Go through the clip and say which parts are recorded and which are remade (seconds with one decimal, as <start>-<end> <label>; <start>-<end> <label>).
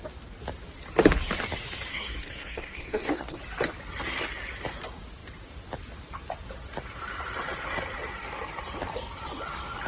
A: 0.0-1.9 recorded; 1.9-3.4 remade; 3.4-9.9 recorded